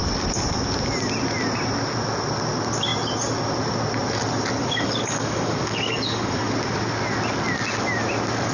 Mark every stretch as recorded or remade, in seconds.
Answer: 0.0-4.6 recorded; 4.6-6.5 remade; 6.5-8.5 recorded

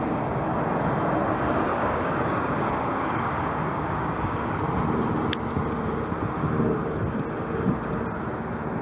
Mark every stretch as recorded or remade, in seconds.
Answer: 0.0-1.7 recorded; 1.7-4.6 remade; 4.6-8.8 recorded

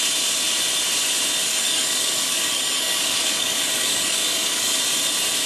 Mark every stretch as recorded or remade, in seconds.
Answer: 0.0-1.5 recorded; 1.5-4.8 remade; 4.8-5.5 recorded

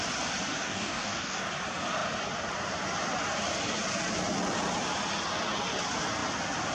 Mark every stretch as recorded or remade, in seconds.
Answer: 0.0-0.6 recorded; 0.6-1.5 remade; 1.5-6.7 recorded

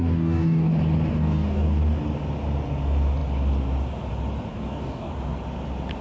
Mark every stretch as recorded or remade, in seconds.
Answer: 0.0-0.7 remade; 0.7-1.2 recorded; 1.2-1.8 remade; 1.8-4.5 recorded; 4.5-5.1 remade; 5.1-6.0 recorded

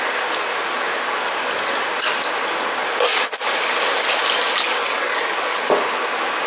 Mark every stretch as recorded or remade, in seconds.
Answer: 0.0-4.7 recorded; 4.7-5.6 remade; 5.6-6.5 recorded